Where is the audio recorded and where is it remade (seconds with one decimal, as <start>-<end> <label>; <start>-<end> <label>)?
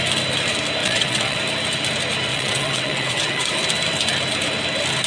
0.0-0.8 recorded; 0.8-1.4 remade; 1.4-2.3 recorded; 2.3-3.5 remade; 3.5-5.1 recorded